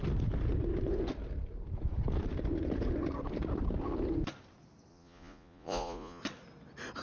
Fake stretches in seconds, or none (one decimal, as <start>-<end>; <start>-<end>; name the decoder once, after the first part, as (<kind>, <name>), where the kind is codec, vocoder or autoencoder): 4.9-6.2 (vocoder, Vocos)